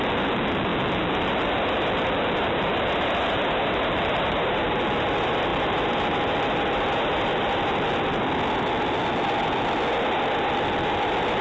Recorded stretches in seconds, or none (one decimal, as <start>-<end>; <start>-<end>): 0.0-11.4